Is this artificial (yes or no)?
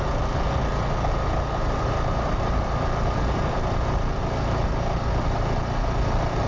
no